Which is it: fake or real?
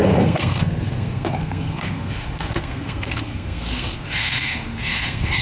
fake